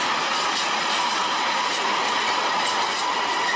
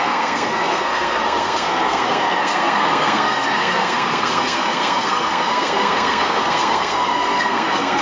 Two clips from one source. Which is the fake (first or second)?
second